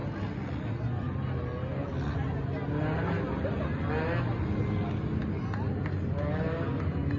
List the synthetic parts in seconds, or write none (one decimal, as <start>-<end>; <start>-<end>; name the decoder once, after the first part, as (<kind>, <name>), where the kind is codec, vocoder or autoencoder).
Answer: none